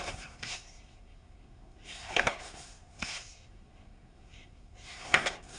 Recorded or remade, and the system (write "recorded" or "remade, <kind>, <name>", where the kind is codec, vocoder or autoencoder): remade, codec, SNAC